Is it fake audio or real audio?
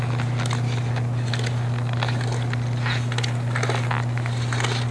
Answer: real